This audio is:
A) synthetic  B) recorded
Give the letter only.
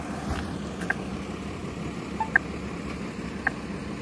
B